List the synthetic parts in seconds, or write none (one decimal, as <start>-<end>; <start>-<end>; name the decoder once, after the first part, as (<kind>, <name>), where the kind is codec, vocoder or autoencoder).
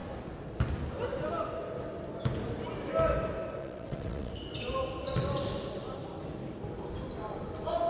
3.6-4.3 (vocoder, WaveNeXt)